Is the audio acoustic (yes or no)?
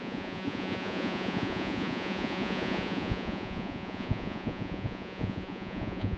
no